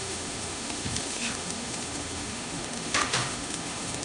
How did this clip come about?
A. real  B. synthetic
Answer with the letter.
B